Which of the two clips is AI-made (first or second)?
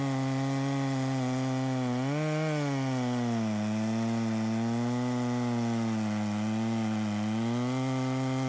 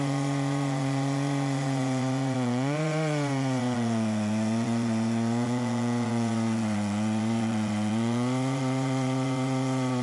second